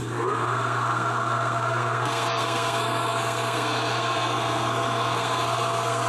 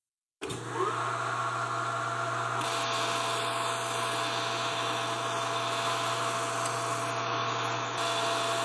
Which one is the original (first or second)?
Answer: second